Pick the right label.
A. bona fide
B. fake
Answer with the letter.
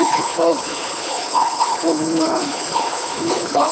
B